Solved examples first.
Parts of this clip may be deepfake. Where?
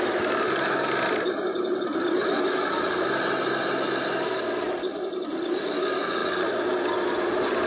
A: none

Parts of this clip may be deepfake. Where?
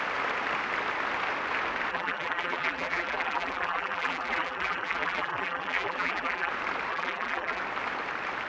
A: 1.9-6.5 (vocoder, BigVGAN v2); 6.9-7.6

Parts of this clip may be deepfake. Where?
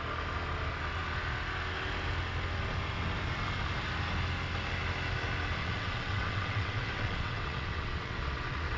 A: 5.6-8.8 (vocoder, WaveNeXt)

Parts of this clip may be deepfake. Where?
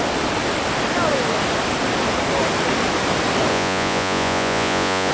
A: 3.5-5.1 (vocoder, Vocos)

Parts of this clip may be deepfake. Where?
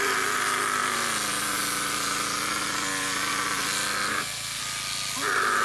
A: 4.1-4.6 (codec, SNAC)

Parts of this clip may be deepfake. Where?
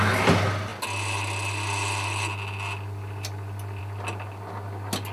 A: none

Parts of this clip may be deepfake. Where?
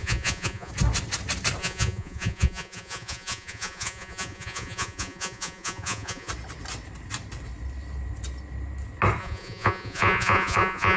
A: 0.0-0.7 (vocoder, Vocos); 1.6-6.3; 9.2-11.0